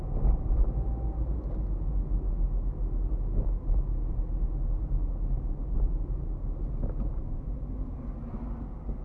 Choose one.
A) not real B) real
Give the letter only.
B